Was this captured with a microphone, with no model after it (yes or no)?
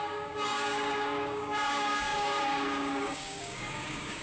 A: no